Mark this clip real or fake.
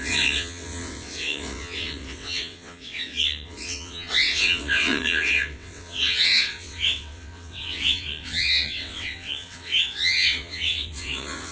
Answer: fake